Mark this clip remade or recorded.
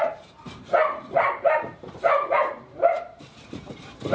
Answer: remade